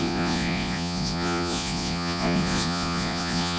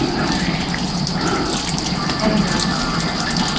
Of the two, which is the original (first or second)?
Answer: second